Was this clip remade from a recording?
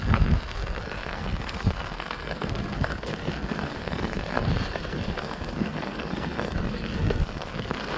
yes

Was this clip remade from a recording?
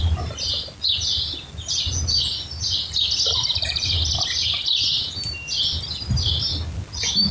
no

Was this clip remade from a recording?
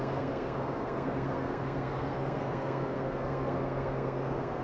yes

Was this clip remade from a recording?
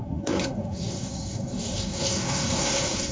yes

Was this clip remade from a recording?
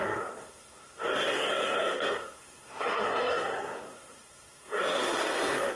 yes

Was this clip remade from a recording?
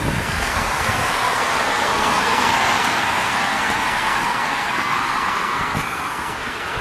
yes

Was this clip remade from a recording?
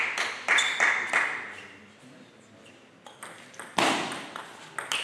no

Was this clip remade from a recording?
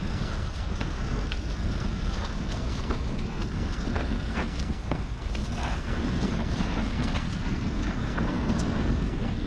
yes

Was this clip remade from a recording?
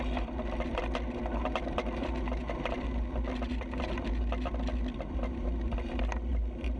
no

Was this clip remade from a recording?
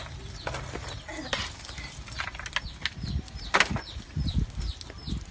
no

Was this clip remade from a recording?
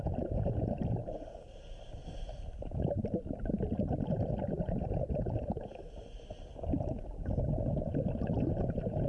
no